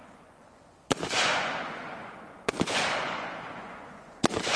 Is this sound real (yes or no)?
no